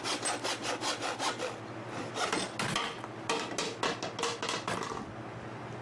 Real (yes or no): yes